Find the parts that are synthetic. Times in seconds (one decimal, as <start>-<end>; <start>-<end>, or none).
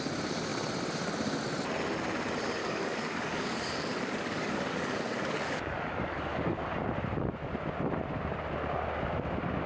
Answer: 2.6-6.8